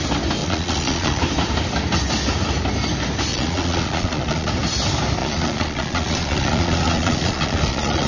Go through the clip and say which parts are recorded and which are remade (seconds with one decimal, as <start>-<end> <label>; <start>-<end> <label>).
0.0-0.4 recorded; 0.4-1.2 remade; 1.2-3.3 recorded; 3.3-4.5 remade; 4.5-5.2 recorded; 5.2-8.1 remade